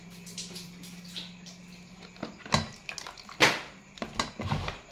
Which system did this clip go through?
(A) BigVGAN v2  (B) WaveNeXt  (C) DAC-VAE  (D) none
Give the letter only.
D